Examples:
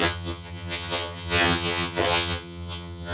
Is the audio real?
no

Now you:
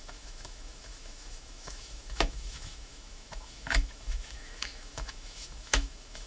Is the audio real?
no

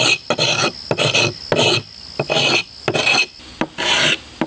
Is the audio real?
yes